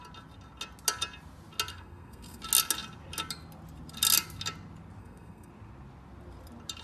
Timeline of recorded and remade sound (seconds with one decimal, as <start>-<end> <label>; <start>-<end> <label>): 0.0-1.7 recorded; 1.7-2.4 remade; 2.4-5.0 recorded; 5.0-5.5 remade; 5.5-6.8 recorded